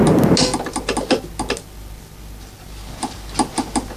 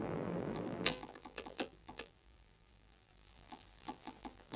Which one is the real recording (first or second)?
first